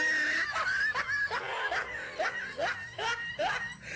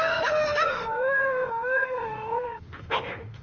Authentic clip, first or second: first